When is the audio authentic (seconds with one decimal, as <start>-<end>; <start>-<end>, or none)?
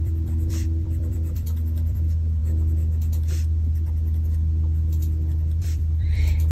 2.4-5.6